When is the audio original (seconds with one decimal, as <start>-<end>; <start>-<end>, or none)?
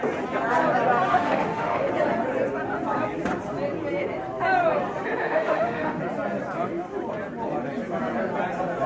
0.0-1.1; 1.9-5.2; 6.0-8.9